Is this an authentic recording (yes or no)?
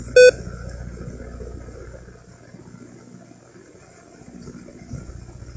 yes